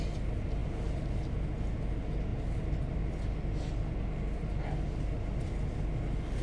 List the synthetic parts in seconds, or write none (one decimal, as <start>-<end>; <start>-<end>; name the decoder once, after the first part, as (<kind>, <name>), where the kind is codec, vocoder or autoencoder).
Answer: none